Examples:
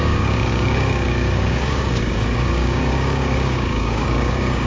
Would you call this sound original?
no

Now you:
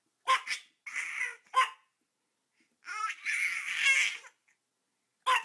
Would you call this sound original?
yes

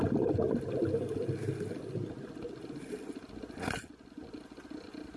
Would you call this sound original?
yes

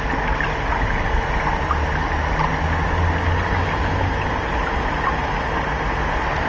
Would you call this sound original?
yes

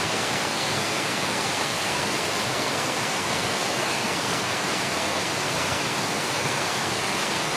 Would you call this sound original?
no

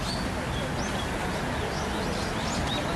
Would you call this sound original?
yes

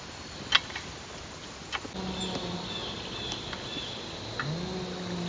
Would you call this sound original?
yes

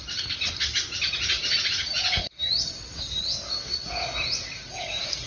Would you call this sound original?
yes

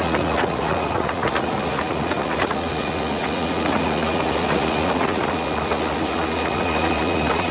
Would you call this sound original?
no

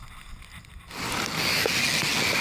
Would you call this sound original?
yes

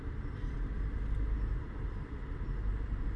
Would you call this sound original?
no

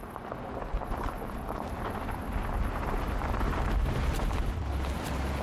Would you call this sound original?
yes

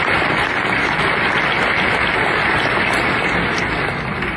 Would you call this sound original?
yes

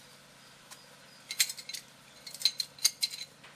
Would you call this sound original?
yes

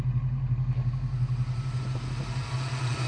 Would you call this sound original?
yes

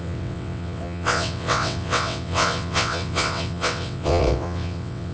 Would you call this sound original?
no